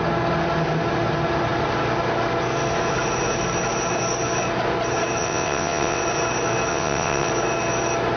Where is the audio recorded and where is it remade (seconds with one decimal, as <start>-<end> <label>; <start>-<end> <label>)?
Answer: 0.0-5.2 recorded; 5.2-6.0 remade; 6.0-6.7 recorded; 6.7-7.3 remade; 7.3-8.2 recorded